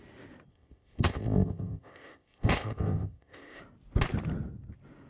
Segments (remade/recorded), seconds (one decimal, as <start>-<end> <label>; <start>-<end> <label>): 0.0-0.5 recorded; 0.5-3.6 remade; 3.6-5.1 recorded